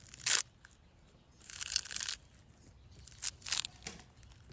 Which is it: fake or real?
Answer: real